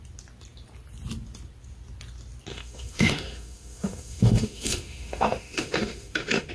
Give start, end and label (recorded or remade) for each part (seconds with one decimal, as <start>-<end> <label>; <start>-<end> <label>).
0.0-2.5 recorded; 2.5-6.5 remade